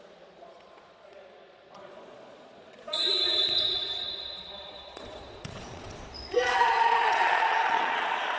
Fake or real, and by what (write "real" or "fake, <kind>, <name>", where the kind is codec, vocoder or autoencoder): fake, vocoder, Vocos